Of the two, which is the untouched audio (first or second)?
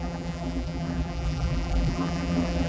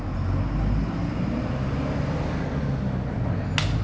second